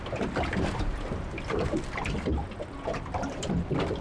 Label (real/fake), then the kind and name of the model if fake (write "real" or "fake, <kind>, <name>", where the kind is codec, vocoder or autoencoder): fake, vocoder, BigVGAN v2